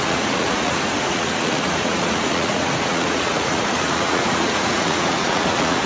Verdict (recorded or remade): remade